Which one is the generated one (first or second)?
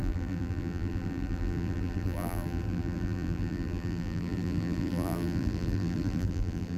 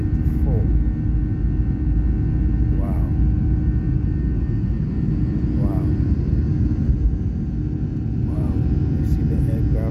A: first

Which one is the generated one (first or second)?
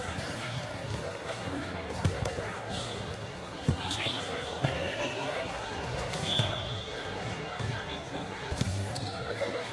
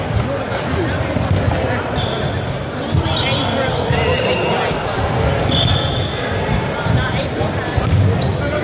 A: first